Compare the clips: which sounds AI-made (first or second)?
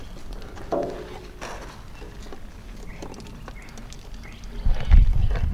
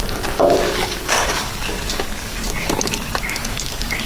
second